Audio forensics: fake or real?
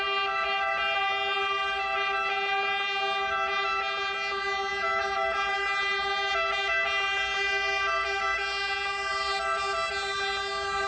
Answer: real